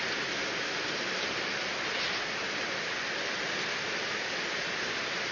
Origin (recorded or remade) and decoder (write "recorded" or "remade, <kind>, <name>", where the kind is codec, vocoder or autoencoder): recorded